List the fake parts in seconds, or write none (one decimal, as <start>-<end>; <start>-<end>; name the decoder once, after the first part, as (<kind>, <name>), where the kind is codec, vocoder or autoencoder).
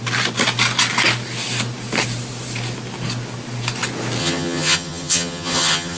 4.2-6.0 (vocoder, HiFi-GAN)